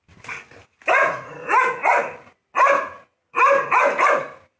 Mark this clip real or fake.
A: real